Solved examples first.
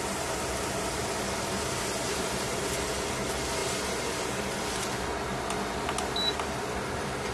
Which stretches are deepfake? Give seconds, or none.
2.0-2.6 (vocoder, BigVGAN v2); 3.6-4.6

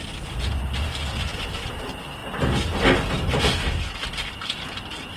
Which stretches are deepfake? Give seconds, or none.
none

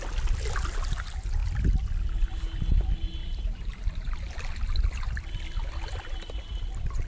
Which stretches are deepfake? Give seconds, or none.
3.2-4.1 (vocoder, BigVGAN v2)

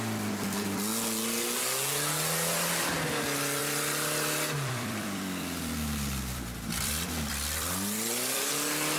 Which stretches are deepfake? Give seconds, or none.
3.6-8.5 (vocoder, BigVGAN v2)

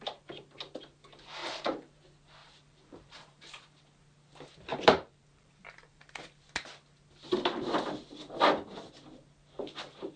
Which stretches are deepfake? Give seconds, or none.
1.4-2.0 (vocoder, BigVGAN v2); 2.4-3.8; 4.7-6.2

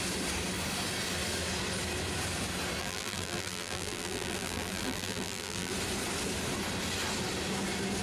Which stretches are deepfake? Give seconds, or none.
2.8-5.7 (vocoder, BigVGAN v2)

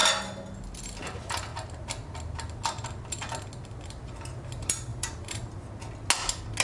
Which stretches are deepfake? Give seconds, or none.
4.9-5.6 (vocoder, BigVGAN v2)

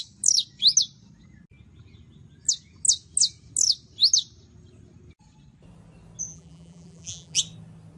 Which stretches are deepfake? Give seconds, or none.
6.3-7.4 (vocoder, BigVGAN v2)